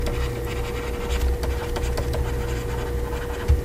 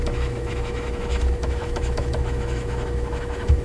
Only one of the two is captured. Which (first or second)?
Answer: first